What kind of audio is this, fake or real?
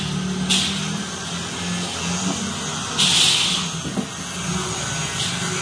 real